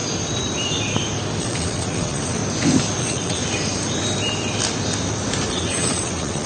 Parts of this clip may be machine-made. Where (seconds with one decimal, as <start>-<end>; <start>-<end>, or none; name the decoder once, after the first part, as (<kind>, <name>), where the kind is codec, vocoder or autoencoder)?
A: 1.4-2.4 (vocoder, WaveNeXt); 3.0-3.4; 5.5-6.5